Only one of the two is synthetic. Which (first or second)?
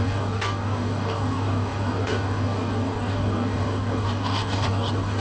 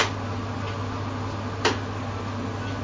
first